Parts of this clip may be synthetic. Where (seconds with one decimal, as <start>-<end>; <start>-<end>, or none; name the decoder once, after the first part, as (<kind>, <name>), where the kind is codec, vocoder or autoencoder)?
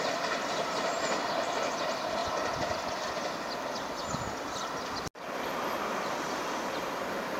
none